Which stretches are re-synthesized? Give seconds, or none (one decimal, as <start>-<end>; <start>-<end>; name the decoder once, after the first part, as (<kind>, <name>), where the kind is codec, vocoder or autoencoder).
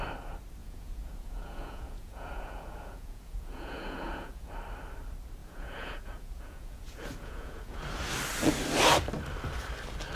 0.6-4.5 (vocoder, Vocos); 5.4-7.8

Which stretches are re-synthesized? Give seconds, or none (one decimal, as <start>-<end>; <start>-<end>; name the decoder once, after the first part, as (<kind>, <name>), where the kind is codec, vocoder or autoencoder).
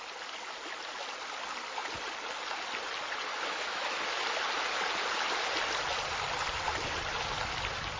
3.3-4.0 (autoencoder, DAC-VAE)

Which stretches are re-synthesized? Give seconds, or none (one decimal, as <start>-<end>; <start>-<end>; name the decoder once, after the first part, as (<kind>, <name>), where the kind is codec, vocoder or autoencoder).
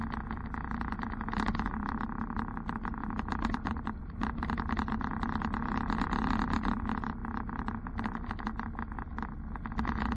none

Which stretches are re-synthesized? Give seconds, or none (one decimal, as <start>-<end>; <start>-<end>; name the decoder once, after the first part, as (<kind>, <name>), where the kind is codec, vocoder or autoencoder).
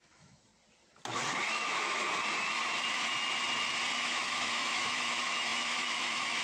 0.0-0.5 (autoencoder, DAC-VAE); 1.5-2.0; 4.0-6.4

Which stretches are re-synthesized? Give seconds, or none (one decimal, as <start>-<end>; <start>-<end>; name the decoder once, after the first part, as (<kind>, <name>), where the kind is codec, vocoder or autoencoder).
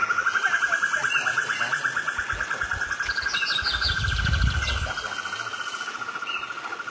1.4-2.1 (vocoder, BigVGAN v2)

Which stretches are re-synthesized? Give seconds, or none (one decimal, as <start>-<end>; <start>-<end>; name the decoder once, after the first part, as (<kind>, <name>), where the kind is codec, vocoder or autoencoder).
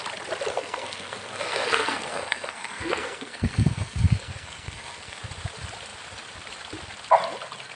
0.5-5.2 (codec, SNAC)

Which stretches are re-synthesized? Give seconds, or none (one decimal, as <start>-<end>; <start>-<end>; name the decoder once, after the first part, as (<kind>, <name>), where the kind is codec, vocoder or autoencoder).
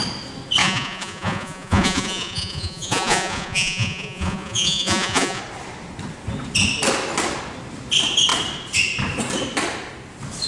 0.6-5.4 (vocoder, Vocos)